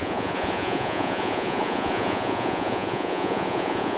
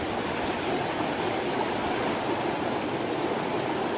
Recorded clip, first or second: second